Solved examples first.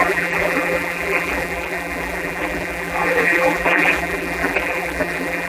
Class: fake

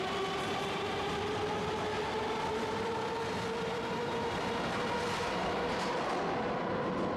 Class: real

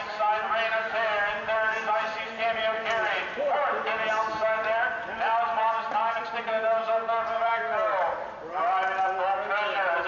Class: real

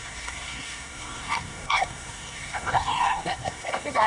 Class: fake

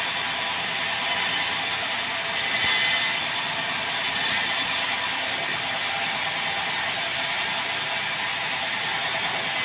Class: real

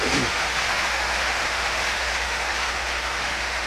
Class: fake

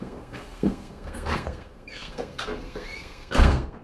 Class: fake